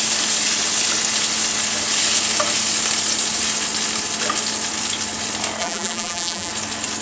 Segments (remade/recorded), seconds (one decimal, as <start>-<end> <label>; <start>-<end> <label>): 0.0-5.6 recorded; 5.6-6.5 remade; 6.5-7.0 recorded